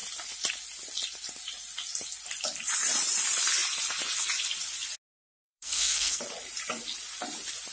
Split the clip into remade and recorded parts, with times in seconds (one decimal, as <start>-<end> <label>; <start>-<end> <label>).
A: 0.0-5.2 recorded; 5.2-6.2 remade; 6.2-7.7 recorded